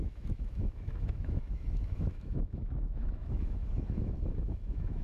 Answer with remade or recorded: remade